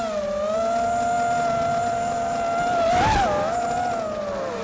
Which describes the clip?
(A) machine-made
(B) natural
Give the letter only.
B